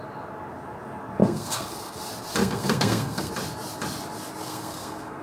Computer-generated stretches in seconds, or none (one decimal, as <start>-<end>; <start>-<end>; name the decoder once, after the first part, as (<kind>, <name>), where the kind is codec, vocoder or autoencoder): 1.2-2.0 (codec, SNAC); 2.4-3.3; 4.4-5.2